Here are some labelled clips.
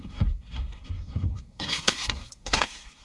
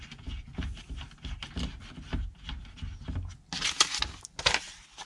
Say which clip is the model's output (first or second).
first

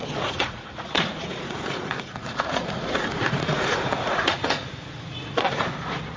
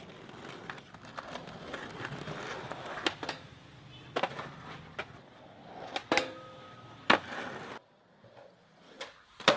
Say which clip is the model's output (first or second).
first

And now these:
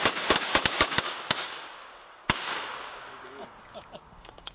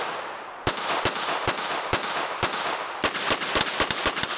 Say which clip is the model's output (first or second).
first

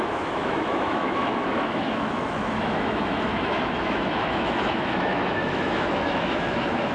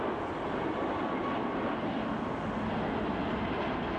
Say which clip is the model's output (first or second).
first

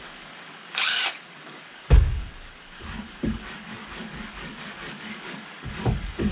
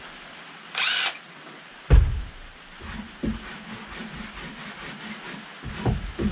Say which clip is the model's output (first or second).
first